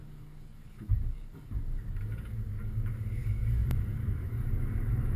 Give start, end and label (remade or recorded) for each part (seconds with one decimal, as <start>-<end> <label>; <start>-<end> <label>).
0.0-5.2 remade